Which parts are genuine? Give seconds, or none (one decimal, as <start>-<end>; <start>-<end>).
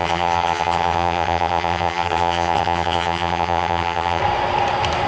4.2-5.1